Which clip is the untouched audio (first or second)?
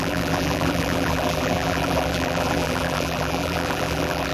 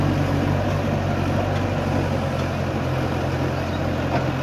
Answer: second